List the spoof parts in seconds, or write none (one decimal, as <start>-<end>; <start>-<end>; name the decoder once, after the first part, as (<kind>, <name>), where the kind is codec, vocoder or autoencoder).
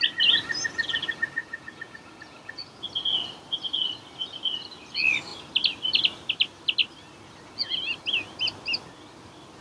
1.4-2.8 (vocoder, Vocos)